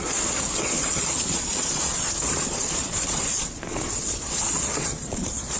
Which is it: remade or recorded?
remade